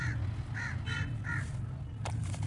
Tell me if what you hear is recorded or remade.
recorded